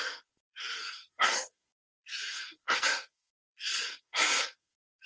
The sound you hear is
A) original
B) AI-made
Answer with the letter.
B